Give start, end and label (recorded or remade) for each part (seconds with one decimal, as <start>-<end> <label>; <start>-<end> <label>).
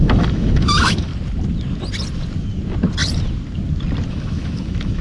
0.0-1.1 remade; 1.1-4.1 recorded; 4.1-5.0 remade